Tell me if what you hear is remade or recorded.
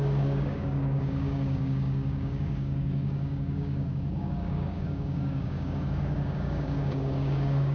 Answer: remade